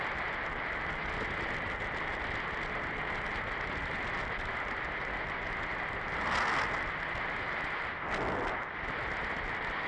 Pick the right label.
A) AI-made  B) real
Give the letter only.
B